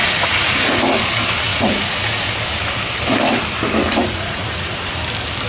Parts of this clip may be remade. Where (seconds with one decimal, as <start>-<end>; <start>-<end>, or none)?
0.0-0.8; 1.5-2.3; 3.8-5.0